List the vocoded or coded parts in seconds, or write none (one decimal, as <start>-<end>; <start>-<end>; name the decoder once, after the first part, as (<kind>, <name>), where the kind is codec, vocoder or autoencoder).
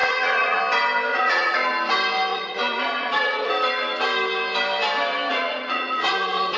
0.0-0.6 (vocoder, Vocos); 1.1-1.7; 2.3-3.5; 5.3-6.6